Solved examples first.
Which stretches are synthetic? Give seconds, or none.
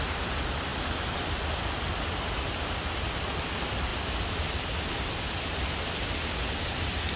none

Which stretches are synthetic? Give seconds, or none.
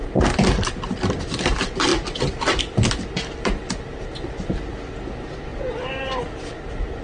none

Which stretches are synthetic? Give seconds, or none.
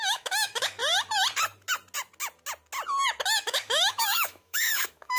0.0-0.8 (autoencoder, DAC-VAE); 3.4-5.2